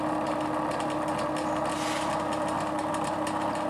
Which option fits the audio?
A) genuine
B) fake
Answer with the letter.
A